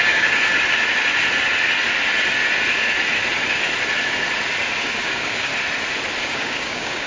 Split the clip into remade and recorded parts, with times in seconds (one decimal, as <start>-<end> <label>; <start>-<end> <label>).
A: 0.0-0.5 remade; 0.5-4.8 recorded; 4.8-5.5 remade; 5.5-6.2 recorded; 6.2-7.1 remade